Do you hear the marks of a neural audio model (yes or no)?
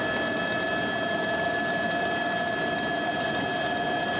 no